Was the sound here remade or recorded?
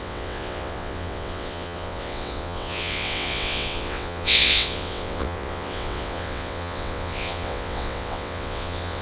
remade